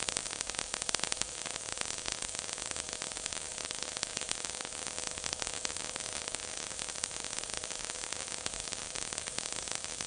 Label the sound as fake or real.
fake